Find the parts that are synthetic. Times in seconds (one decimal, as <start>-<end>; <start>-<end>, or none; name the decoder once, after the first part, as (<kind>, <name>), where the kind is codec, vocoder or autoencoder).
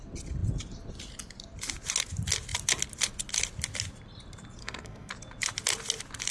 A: 4.6-5.1 (codec, SNAC)